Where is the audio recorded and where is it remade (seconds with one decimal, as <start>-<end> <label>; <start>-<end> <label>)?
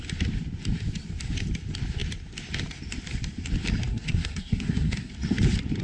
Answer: 0.0-3.9 recorded; 3.9-5.1 remade; 5.1-5.8 recorded